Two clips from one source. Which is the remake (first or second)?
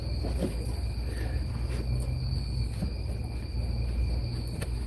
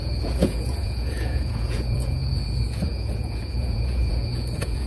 second